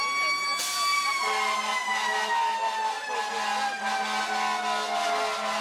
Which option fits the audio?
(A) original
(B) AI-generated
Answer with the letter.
A